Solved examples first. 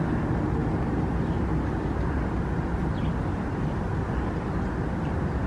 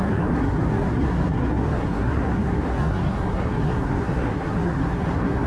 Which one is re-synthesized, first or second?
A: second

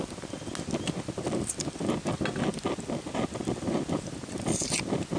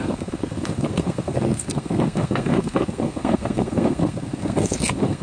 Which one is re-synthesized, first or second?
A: second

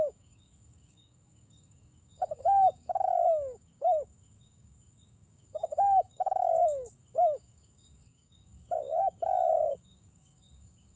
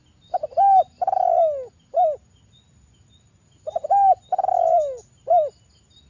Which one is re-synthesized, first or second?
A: first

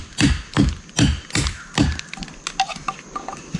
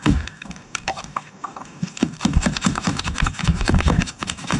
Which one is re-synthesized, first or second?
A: second